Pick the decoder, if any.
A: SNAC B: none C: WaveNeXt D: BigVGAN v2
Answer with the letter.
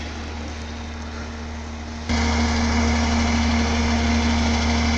B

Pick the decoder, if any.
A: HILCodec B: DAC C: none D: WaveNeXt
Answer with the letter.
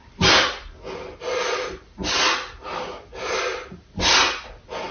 C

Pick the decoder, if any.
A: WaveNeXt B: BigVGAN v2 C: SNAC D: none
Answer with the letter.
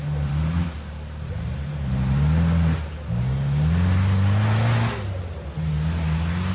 D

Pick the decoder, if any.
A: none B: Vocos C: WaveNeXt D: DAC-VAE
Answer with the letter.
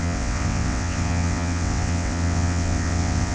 C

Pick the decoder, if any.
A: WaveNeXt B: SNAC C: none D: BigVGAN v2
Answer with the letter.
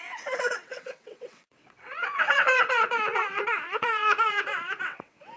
A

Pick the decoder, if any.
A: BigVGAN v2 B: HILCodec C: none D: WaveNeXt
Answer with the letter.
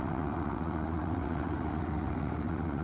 D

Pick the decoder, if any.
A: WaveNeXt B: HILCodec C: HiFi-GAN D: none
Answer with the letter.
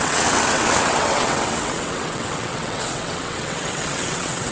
A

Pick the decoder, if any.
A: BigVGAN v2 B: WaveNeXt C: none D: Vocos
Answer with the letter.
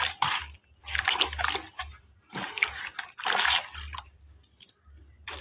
C